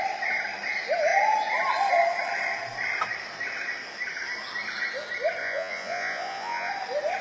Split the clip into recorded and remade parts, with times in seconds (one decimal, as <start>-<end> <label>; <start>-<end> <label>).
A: 0.0-5.4 recorded; 5.4-6.7 remade; 6.7-7.2 recorded